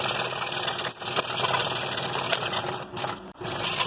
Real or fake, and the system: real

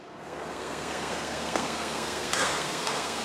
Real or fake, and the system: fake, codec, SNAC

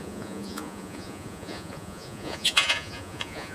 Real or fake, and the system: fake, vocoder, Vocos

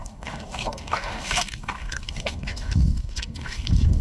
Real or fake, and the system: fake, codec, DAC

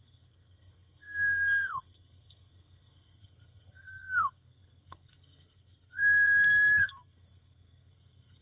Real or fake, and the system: fake, codec, SNAC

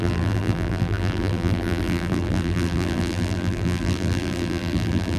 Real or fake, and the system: fake, vocoder, BigVGAN v2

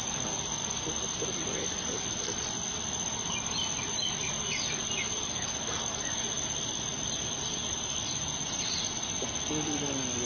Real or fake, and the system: real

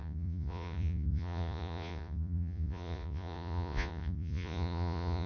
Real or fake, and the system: fake, vocoder, Vocos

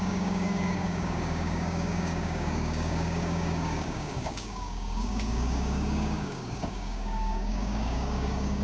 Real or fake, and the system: fake, codec, DAC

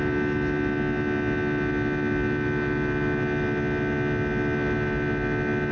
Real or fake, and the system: real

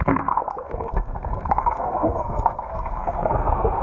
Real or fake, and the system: fake, codec, SNAC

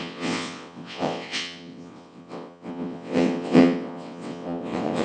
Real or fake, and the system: fake, vocoder, WaveNeXt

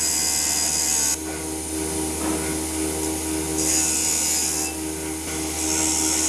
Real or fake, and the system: real